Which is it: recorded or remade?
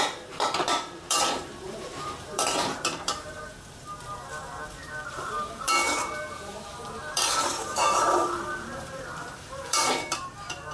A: remade